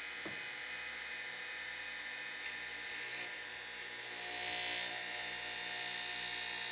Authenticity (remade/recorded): recorded